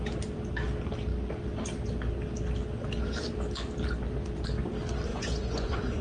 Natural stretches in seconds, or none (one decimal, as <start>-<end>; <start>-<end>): 0.0-5.1